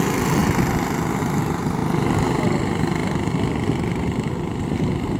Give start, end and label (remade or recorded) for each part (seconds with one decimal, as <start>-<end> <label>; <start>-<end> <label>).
0.0-5.2 recorded